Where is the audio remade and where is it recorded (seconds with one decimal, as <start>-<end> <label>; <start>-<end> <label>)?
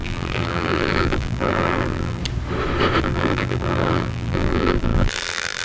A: 0.0-2.2 remade; 2.2-3.0 recorded; 3.0-5.6 remade